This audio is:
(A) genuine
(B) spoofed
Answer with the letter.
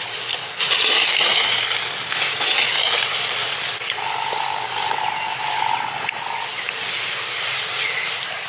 A